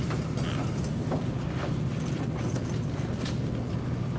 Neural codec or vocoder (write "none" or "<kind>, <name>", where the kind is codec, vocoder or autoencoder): none